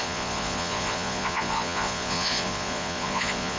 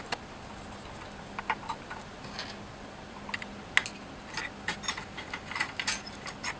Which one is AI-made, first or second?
first